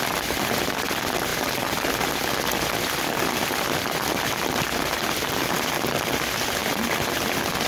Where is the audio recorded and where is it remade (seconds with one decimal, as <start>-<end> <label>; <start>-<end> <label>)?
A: 0.0-7.7 recorded